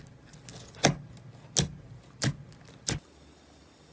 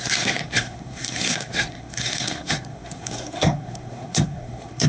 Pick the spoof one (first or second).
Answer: second